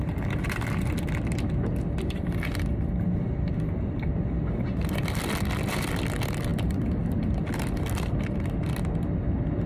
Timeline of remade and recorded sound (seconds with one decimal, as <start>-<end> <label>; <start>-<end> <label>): 0.0-6.5 recorded; 6.5-8.4 remade; 8.4-9.7 recorded